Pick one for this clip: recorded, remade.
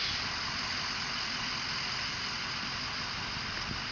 recorded